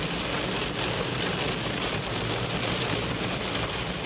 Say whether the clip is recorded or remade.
recorded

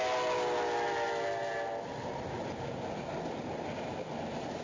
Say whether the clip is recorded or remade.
recorded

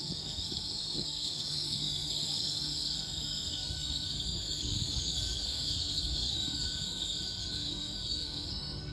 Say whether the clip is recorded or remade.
remade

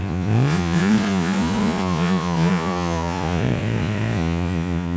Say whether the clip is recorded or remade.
remade